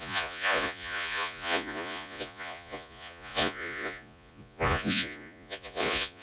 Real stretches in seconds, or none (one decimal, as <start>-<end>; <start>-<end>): none